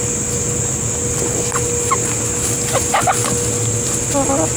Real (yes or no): yes